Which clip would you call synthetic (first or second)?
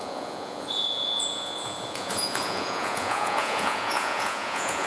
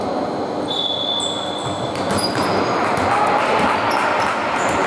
first